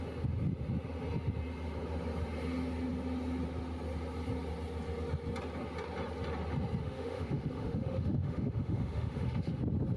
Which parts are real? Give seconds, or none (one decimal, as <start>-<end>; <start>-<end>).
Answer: 0.0-6.8; 9.5-10.0